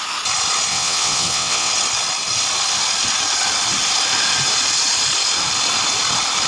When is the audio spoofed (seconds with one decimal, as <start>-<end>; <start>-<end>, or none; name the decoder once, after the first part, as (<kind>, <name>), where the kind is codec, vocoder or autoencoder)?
0.7-1.7 (vocoder, WaveNeXt)